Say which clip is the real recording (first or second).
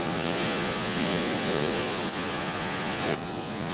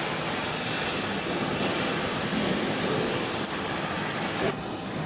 second